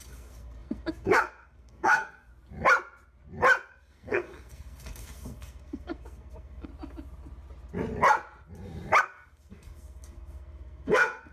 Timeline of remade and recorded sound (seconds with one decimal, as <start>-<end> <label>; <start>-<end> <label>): 0.0-2.3 remade; 2.3-3.7 recorded; 3.7-6.7 remade; 6.7-9.0 recorded; 9.0-11.3 remade